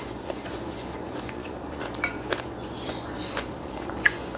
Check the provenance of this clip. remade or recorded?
remade